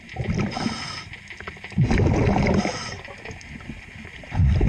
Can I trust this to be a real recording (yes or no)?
yes